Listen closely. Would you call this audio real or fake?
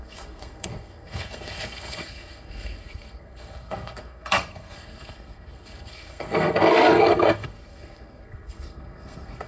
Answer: fake